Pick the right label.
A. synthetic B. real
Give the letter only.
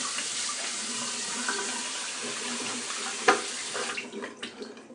B